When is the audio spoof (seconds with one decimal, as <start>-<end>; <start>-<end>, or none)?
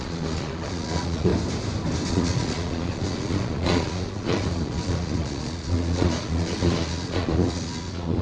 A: 0.0-1.3; 2.1-8.2